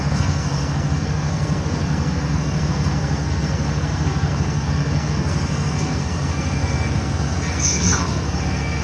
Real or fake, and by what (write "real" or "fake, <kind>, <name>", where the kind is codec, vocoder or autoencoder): fake, codec, SNAC